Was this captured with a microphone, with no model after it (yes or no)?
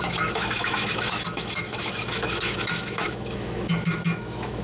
no